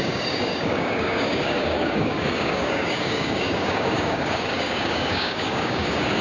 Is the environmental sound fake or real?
fake